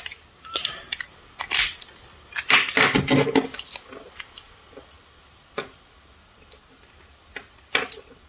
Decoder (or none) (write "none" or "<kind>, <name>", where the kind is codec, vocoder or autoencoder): none